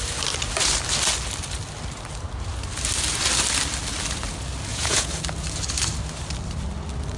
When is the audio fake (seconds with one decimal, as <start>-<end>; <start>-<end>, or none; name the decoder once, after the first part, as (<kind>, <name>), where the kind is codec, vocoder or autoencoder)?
4.7-5.2 (vocoder, Vocos)